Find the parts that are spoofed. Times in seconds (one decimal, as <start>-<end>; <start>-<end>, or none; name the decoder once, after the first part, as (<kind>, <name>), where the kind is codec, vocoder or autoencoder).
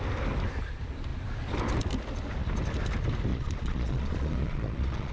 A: 3.3-5.1 (vocoder, Vocos)